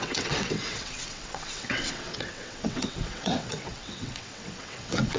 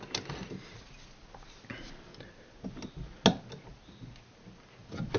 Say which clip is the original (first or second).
second